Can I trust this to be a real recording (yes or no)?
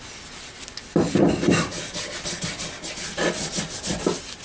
yes